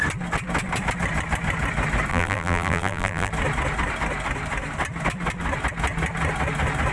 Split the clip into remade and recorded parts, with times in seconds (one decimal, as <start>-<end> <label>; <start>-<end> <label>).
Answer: 0.0-2.1 recorded; 2.1-3.3 remade; 3.3-6.9 recorded